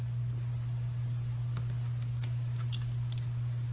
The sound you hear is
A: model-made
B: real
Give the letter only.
B